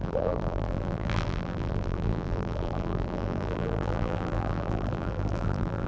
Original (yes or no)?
no